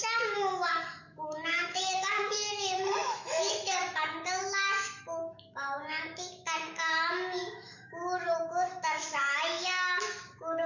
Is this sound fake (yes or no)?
yes